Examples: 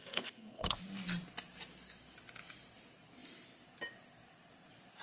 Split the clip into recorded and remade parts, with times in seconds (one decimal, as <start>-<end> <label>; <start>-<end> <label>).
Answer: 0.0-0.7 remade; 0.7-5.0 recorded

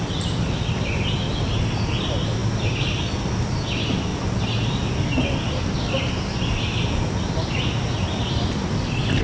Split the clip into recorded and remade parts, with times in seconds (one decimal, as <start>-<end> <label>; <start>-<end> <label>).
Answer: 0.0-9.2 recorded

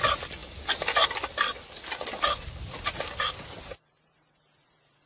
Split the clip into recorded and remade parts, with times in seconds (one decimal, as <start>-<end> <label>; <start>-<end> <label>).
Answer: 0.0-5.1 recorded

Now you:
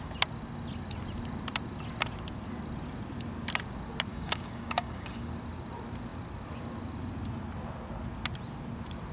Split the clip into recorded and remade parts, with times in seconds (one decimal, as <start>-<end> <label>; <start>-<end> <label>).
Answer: 0.0-4.1 recorded; 4.1-5.3 remade; 5.3-9.1 recorded

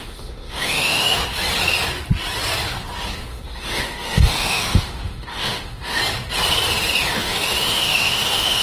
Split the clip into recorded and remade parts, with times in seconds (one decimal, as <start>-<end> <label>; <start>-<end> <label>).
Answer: 0.0-1.2 remade; 1.2-3.3 recorded; 3.3-6.0 remade; 6.0-7.1 recorded; 7.1-8.6 remade

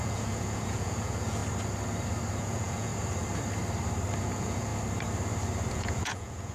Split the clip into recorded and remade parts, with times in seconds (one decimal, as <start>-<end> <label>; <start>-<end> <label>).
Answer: 0.0-1.4 remade; 1.4-2.4 recorded; 2.4-2.9 remade; 2.9-4.2 recorded; 4.2-4.7 remade; 4.7-5.7 recorded; 5.7-6.5 remade

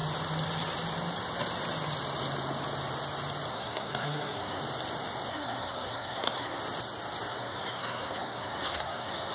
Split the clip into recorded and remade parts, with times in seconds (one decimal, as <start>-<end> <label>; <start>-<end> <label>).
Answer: 0.0-3.5 recorded; 3.5-4.6 remade; 4.6-5.3 recorded; 5.3-6.6 remade; 6.6-7.3 recorded; 7.3-9.3 remade

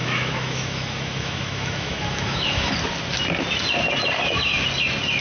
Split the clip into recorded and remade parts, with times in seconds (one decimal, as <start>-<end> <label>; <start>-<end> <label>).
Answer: 0.0-2.7 remade; 2.7-5.2 recorded